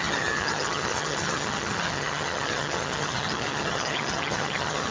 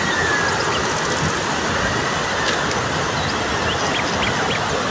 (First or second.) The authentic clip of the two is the second